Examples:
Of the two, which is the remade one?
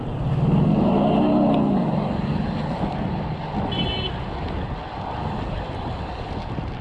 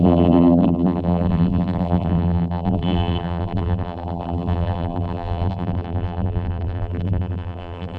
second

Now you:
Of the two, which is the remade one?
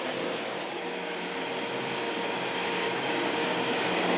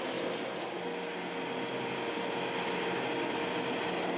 first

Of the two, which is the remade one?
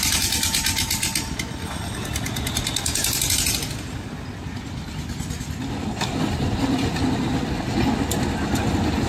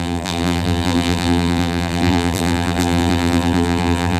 second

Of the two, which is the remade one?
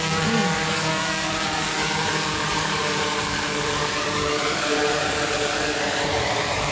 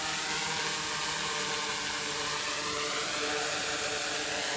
first